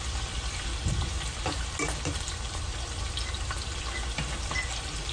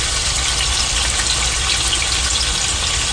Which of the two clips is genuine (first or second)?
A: first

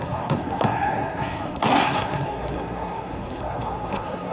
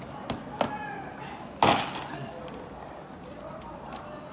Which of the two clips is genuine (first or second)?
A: second